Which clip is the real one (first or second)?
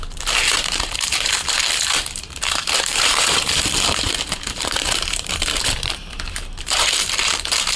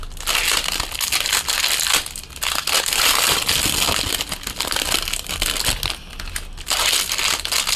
second